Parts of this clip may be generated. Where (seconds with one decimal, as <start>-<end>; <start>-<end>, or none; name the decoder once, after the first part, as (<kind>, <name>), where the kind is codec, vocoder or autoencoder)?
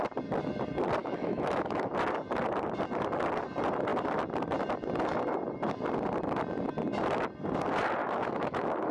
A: 1.0-1.9 (autoencoder, DAC-VAE); 8.0-8.9